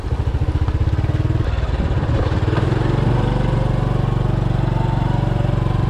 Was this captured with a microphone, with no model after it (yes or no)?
yes